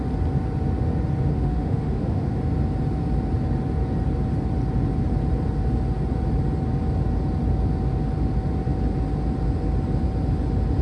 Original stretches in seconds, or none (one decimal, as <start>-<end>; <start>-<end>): 0.0-1.3; 2.4-10.8

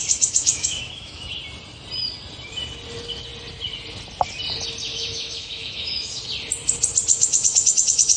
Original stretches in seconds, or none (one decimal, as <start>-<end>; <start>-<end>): 1.4-4.9; 6.2-7.1

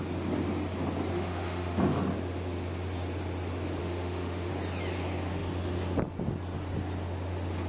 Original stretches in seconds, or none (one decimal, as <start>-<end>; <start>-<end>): 0.0-1.1; 1.8-3.8; 4.5-7.7

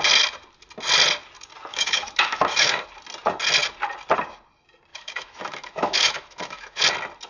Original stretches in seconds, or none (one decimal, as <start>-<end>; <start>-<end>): 0.0-1.7; 2.8-4.9; 6.8-7.3

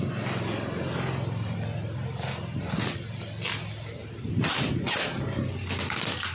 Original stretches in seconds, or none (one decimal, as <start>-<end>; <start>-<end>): 0.0-6.3

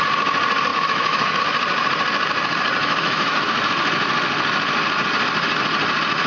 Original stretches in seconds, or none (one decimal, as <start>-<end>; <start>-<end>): 0.0-0.7; 1.4-2.8; 3.5-6.3

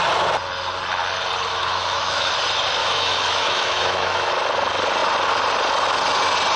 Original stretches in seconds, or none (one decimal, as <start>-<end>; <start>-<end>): 0.0-1.5; 2.3-2.8; 4.3-6.6